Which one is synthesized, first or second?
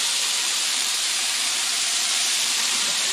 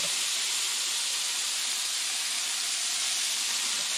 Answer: first